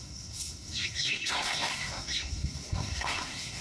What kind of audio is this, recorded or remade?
remade